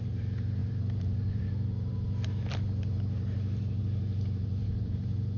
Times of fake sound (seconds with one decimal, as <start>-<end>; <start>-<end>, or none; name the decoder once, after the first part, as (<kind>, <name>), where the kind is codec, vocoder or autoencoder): 0.0-5.4 (vocoder, BigVGAN v2)